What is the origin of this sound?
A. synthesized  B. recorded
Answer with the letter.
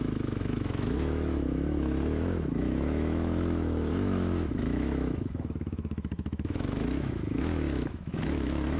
A